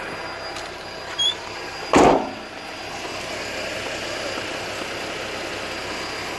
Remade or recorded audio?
recorded